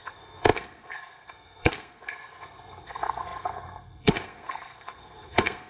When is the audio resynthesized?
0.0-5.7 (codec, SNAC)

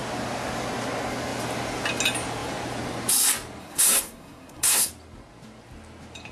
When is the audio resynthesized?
3.6-4.9 (codec, SNAC)

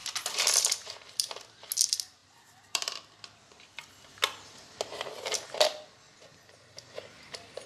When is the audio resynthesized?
0.0-1.5 (vocoder, BigVGAN v2); 2.2-3.9

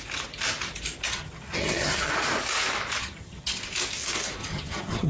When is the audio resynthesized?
1.1-2.1 (vocoder, HiFi-GAN); 3.0-3.6; 4.4-5.1

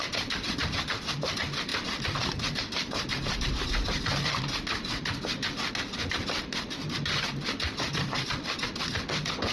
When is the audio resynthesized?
none

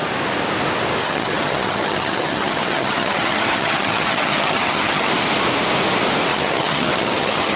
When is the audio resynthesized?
1.0-5.1 (vocoder, HiFi-GAN); 6.3-7.6